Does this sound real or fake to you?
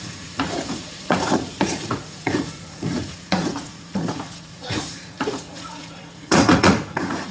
fake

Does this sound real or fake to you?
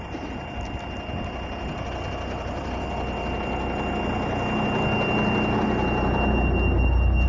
real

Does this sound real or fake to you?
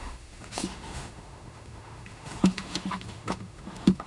fake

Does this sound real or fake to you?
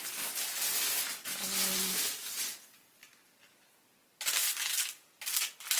real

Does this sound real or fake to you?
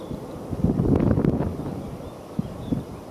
real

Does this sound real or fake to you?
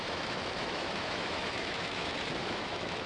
fake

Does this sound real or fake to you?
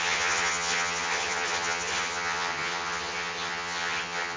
fake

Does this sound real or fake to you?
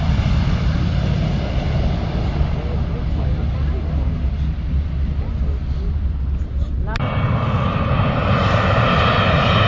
real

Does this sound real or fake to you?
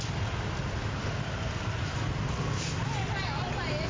real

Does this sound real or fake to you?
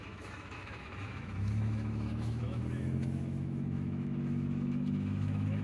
fake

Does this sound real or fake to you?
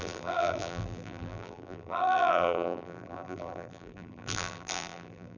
fake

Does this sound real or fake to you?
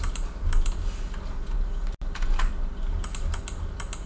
real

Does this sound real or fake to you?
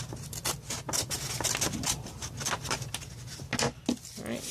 real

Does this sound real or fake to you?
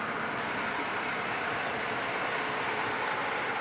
real